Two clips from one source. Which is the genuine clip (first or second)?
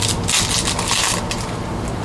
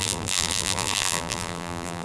first